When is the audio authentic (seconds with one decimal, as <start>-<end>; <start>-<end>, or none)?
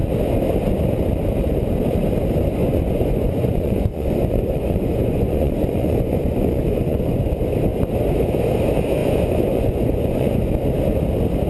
0.0-2.6; 7.3-9.0; 10.4-11.5